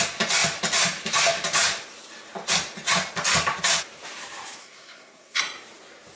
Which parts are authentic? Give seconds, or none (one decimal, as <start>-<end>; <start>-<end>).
0.0-4.6; 5.4-6.2